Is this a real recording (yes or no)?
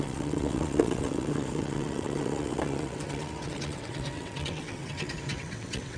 no